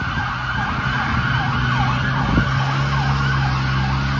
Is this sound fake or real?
real